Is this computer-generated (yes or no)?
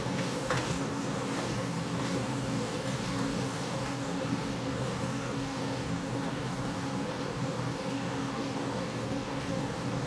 yes